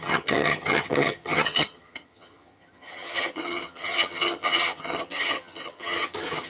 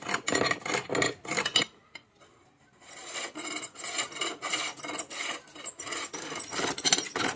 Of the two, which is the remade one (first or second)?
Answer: first